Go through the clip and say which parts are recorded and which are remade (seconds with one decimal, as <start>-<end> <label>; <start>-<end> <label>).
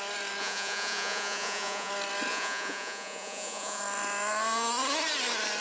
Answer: 0.0-0.4 recorded; 0.4-1.9 remade; 1.9-2.3 recorded; 2.3-3.8 remade; 3.8-5.6 recorded